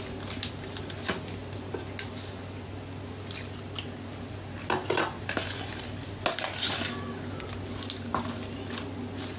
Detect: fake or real real